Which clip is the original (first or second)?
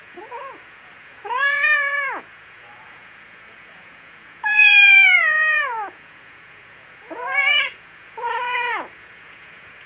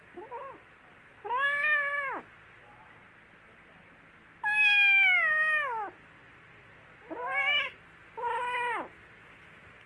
second